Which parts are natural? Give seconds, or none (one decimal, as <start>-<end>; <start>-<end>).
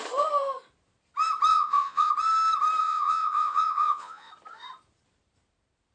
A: 0.0-1.5; 2.1-2.8; 4.3-5.9